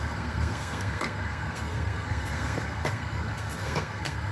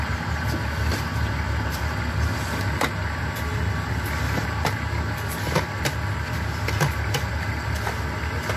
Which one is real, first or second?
second